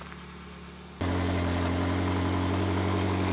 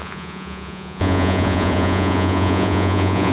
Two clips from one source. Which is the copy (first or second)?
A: second